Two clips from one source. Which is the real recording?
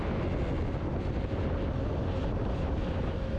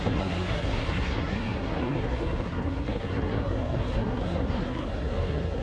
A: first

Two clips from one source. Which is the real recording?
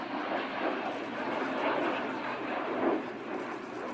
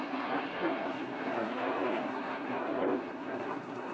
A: first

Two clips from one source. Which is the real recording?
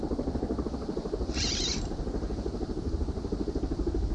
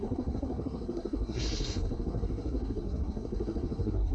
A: first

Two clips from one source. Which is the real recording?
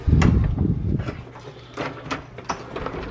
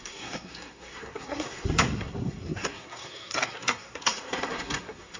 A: first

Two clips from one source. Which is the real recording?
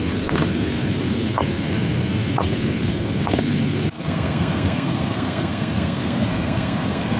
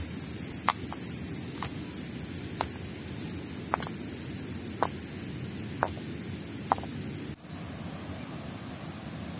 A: second